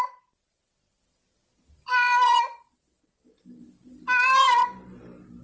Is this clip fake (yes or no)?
no